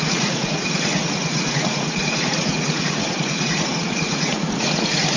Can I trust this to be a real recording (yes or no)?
no